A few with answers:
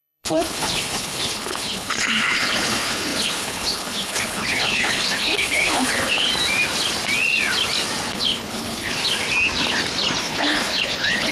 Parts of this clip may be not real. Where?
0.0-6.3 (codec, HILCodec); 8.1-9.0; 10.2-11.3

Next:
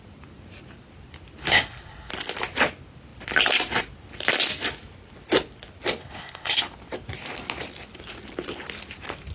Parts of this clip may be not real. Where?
1.4-2.1 (codec, HILCodec); 6.0-6.6

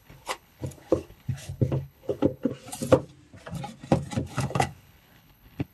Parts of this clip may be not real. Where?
0.0-2.5 (codec, HILCodec); 4.3-5.7

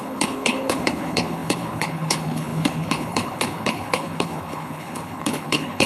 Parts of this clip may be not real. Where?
0.0-5.9 (codec, HILCodec)

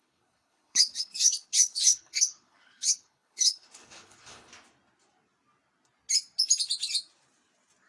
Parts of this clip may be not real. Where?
0.0-4.5 (codec, HILCodec)